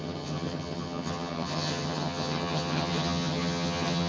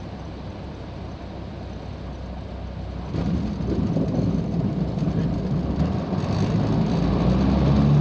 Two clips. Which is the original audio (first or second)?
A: second